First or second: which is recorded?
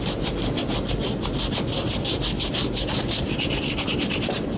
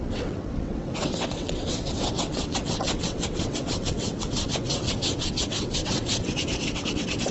first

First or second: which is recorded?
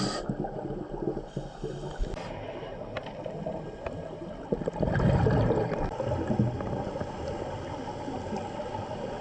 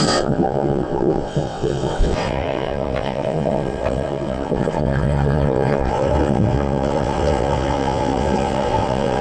first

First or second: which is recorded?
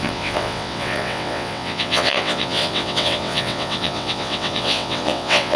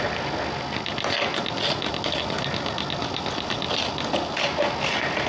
second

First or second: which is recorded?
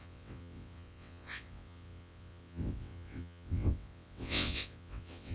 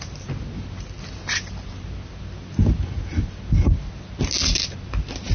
second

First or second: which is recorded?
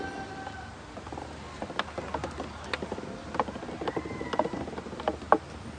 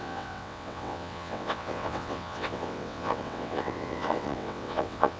first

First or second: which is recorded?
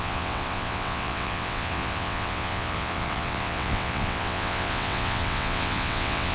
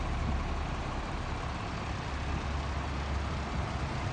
second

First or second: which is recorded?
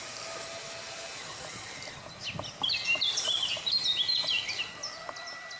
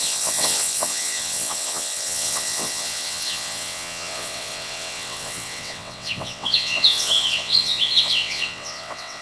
first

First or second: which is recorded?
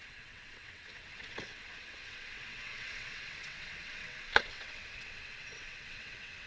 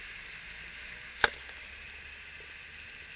second